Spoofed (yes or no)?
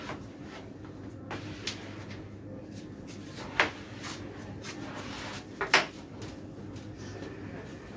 no